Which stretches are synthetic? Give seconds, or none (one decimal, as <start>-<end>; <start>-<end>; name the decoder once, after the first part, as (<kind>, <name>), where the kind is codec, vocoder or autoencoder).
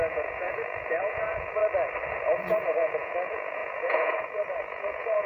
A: 0.0-1.6 (vocoder, Vocos); 2.1-5.3